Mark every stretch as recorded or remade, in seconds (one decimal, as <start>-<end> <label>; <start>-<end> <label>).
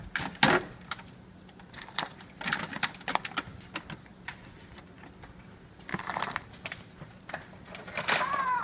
0.0-8.6 recorded